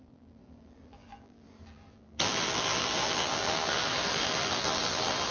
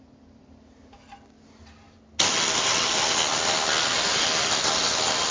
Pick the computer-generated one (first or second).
first